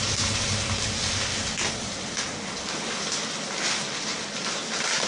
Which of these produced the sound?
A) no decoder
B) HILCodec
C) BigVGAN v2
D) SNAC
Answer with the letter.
A